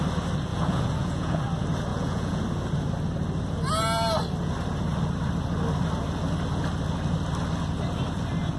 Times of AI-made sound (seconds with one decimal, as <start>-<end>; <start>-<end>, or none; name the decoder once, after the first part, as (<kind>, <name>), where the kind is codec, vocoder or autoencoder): 0.5-1.4 (vocoder, Vocos); 1.9-2.4